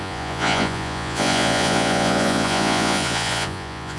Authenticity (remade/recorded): remade